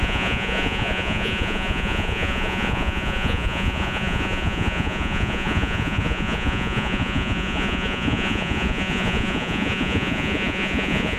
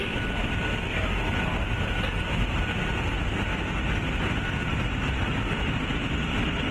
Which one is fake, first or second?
first